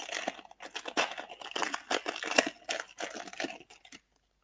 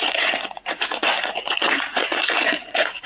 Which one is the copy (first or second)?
second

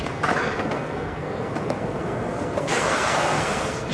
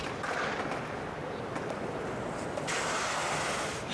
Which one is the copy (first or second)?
first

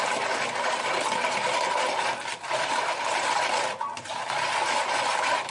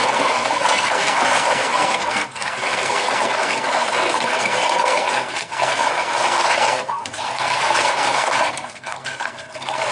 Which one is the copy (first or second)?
second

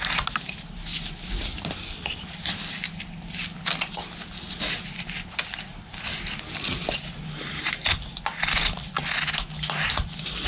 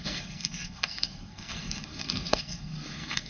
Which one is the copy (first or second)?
second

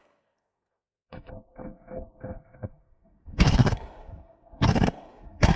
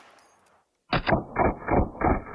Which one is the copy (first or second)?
first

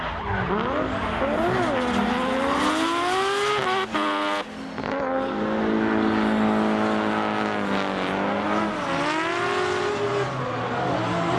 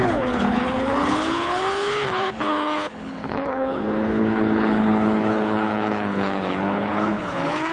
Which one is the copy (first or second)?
second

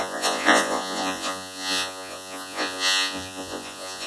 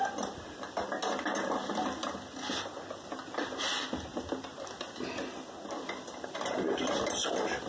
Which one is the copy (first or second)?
first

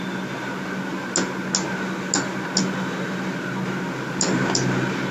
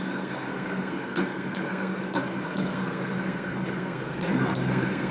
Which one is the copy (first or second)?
second